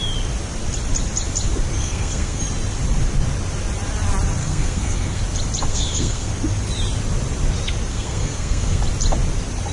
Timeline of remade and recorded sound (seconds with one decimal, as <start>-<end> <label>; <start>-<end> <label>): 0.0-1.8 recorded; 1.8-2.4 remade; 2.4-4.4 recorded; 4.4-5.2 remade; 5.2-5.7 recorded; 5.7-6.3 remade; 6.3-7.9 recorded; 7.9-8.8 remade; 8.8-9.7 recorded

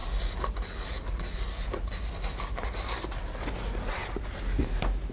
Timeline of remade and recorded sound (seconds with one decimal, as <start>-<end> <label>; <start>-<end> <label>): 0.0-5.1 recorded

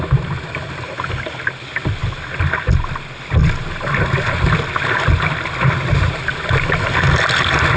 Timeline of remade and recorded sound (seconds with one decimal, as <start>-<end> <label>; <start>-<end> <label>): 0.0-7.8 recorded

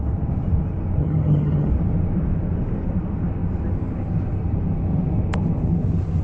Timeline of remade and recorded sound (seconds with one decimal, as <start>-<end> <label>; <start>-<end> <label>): 0.0-1.0 recorded; 1.0-1.7 remade; 1.7-6.2 recorded

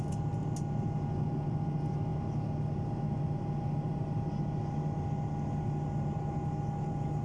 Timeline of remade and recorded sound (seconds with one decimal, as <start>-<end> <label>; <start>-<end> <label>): 0.0-7.2 recorded

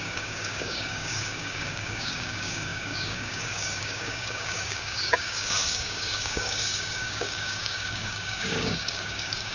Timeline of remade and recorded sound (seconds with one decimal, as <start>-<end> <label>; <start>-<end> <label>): 0.0-9.5 remade